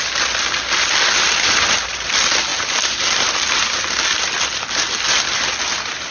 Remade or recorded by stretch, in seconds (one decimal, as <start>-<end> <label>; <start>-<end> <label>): 0.0-6.1 recorded